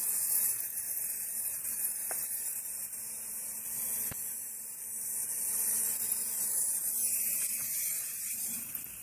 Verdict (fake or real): real